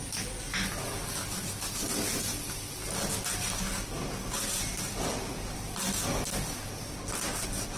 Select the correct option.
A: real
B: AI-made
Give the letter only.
A